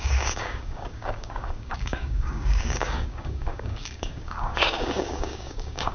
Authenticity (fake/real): fake